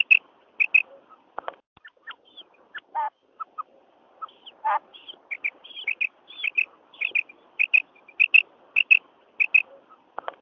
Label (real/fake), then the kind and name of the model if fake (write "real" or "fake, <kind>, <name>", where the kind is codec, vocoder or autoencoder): real